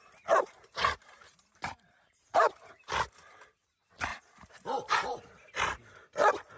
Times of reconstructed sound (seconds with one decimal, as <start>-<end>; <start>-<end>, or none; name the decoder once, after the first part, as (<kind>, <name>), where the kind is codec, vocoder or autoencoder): 0.8-2.7 (vocoder, BigVGAN v2); 4.1-5.5